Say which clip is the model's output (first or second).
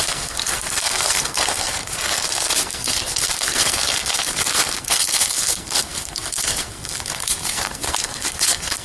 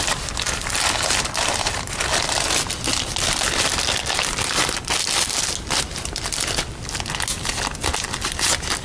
first